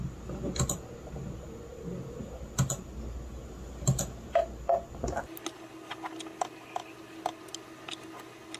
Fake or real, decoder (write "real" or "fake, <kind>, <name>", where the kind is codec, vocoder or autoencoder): real